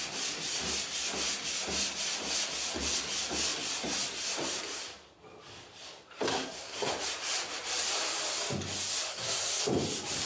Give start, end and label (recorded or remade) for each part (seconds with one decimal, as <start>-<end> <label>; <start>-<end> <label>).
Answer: 0.0-6.3 recorded; 6.3-6.9 remade; 6.9-9.1 recorded; 9.1-9.6 remade; 9.6-10.3 recorded